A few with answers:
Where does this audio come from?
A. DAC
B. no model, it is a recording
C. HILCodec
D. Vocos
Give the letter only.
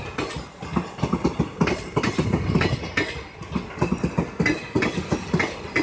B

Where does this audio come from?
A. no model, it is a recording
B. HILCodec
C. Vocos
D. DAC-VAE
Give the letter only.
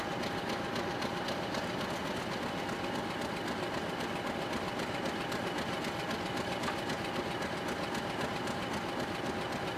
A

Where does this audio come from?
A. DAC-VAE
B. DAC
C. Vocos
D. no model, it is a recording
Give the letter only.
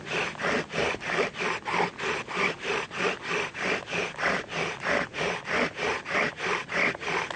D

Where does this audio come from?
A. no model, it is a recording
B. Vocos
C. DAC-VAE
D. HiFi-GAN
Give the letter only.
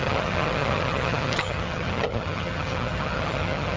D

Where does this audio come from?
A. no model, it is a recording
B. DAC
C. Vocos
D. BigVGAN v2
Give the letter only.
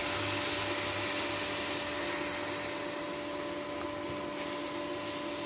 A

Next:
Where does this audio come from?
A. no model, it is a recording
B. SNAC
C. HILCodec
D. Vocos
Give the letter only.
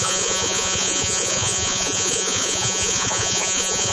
D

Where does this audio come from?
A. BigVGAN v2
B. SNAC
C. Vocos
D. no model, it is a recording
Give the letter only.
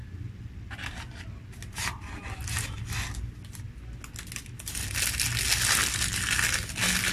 D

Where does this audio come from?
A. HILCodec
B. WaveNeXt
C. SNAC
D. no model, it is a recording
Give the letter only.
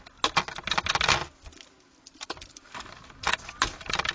D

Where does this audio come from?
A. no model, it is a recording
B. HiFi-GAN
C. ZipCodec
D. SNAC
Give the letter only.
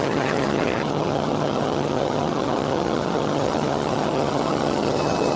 B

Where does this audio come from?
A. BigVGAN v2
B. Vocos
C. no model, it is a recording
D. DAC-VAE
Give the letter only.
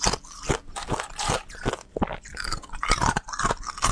C